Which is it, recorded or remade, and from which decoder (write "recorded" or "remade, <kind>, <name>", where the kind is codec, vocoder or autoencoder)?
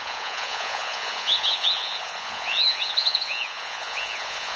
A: remade, vocoder, Vocos